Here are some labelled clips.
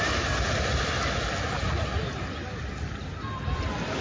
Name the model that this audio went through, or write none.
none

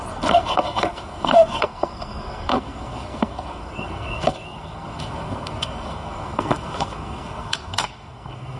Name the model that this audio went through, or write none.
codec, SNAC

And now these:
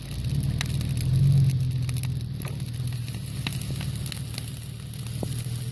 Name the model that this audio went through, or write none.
none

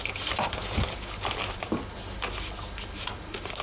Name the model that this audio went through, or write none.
none